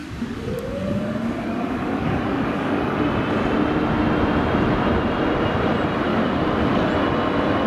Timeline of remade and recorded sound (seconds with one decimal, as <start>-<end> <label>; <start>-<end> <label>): 0.0-3.0 remade; 3.0-6.1 recorded; 6.1-6.9 remade; 6.9-7.7 recorded